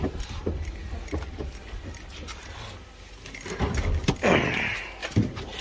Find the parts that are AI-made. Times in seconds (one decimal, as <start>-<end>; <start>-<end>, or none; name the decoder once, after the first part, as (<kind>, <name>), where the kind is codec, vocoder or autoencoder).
5.0-5.6 (vocoder, BigVGAN v2)